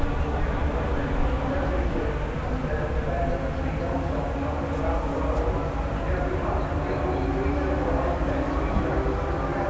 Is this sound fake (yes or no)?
no